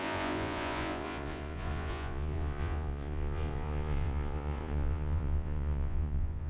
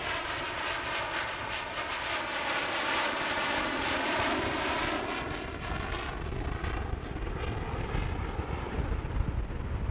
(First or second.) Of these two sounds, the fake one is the first